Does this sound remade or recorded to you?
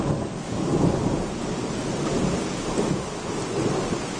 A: recorded